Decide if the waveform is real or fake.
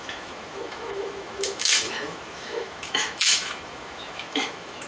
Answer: fake